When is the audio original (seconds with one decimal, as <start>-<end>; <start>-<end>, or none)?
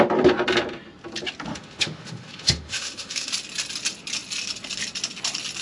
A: 0.0-1.5; 3.3-5.6